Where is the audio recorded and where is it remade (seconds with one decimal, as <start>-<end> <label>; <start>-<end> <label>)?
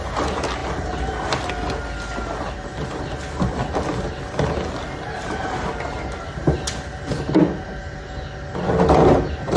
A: 0.0-0.6 recorded; 0.6-1.5 remade; 1.5-9.6 recorded